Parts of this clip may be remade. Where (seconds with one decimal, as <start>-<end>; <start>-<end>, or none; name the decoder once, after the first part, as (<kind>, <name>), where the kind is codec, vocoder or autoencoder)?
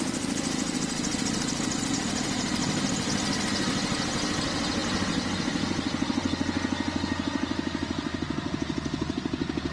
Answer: none